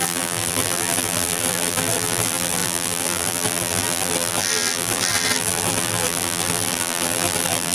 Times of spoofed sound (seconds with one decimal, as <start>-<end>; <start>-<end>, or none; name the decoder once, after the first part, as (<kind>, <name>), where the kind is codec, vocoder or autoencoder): 0.0-7.7 (vocoder, BigVGAN v2)